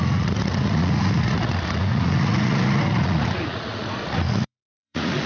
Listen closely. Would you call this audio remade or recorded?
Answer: remade